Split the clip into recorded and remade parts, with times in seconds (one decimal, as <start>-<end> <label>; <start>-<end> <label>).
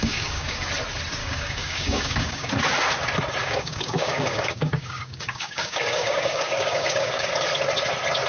0.0-0.7 remade; 0.7-1.2 recorded; 1.2-2.5 remade; 2.5-3.4 recorded; 3.4-7.3 remade; 7.3-8.3 recorded